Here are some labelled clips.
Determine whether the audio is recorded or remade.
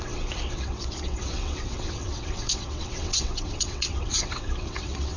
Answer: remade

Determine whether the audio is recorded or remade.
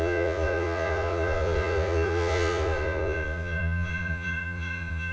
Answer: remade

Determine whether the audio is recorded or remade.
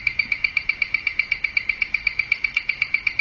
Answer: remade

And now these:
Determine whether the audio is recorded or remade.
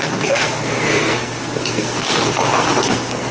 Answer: remade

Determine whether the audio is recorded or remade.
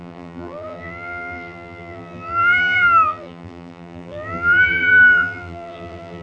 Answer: remade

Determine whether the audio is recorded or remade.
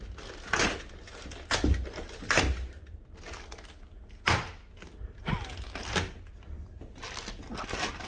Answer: recorded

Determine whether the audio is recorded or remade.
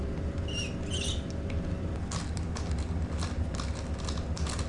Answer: recorded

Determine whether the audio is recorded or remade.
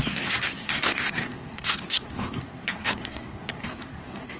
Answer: remade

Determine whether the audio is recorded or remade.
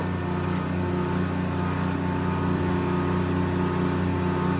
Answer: recorded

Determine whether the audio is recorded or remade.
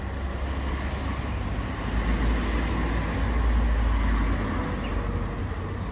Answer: recorded